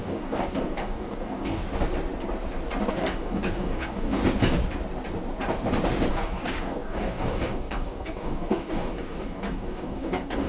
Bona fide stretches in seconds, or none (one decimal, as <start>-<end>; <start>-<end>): 1.6-2.9; 4.2-6.1